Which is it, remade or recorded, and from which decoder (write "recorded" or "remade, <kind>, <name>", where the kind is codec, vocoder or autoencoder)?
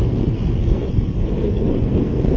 remade, codec, SNAC